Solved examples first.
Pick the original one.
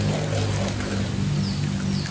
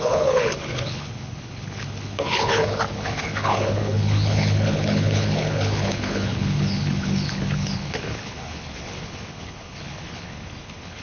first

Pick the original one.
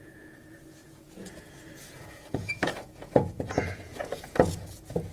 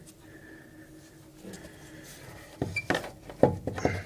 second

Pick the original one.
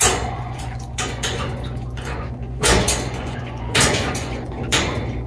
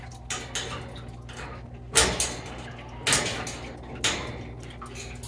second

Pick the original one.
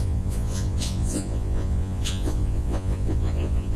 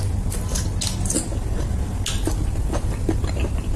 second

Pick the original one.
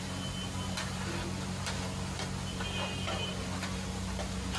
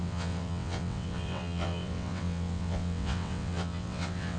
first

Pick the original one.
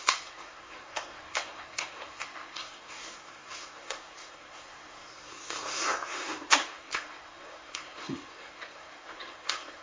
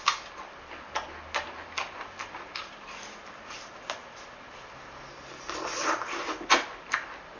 second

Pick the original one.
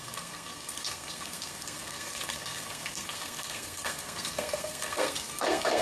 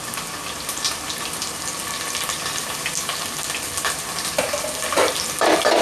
second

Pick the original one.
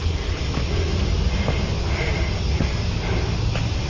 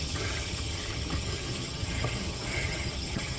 first